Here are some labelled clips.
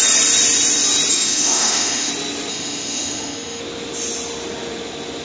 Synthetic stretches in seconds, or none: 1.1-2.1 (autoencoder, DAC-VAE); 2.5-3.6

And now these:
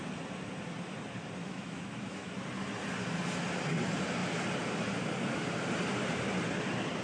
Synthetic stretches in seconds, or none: 1.4-2.3 (autoencoder, DAC-VAE)

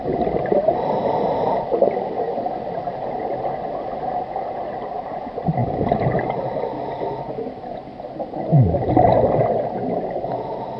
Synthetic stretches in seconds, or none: none

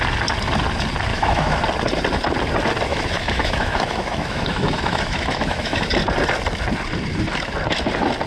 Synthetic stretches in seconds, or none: 1.1-1.6 (autoencoder, DAC-VAE); 2.9-5.9

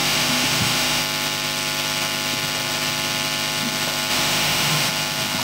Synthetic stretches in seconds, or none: 0.0-1.0 (autoencoder, DAC-VAE); 4.1-4.9

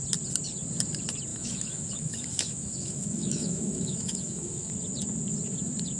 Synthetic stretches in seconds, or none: 1.3-4.7 (autoencoder, DAC-VAE)